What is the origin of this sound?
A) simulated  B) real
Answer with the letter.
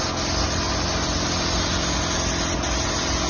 B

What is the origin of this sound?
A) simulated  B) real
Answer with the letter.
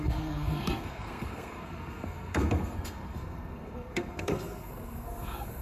A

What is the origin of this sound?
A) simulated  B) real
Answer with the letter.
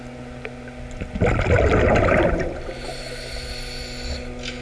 B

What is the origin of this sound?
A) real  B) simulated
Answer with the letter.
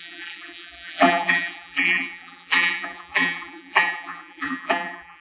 B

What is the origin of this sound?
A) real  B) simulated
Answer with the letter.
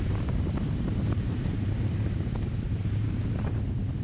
B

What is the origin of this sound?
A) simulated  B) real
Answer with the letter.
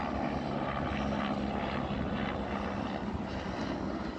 B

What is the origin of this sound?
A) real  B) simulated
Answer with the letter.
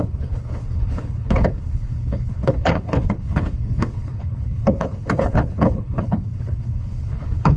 B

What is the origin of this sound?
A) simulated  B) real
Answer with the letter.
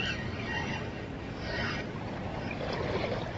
B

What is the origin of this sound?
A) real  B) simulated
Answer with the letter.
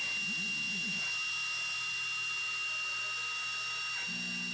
A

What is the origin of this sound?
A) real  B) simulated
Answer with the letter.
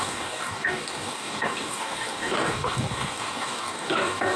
B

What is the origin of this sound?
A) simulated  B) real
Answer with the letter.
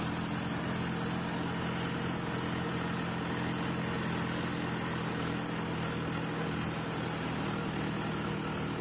B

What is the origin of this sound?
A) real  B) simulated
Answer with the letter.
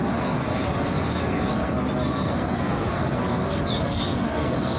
B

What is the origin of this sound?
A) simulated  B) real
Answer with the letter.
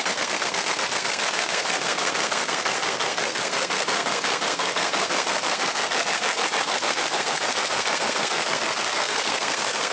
A